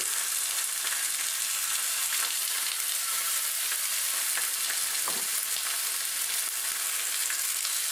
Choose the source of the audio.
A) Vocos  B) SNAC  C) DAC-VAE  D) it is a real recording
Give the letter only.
D